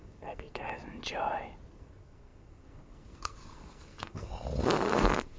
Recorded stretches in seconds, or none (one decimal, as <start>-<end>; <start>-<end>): 0.8-1.7; 4.3-4.9